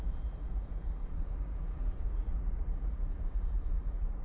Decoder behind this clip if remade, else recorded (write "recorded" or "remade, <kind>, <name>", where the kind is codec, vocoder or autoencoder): remade, vocoder, Vocos